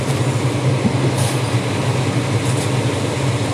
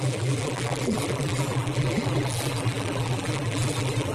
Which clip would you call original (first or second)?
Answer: first